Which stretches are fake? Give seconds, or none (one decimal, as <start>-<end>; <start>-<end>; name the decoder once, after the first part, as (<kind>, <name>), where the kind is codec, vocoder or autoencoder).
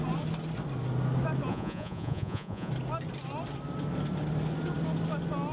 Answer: 1.5-2.7 (vocoder, Vocos)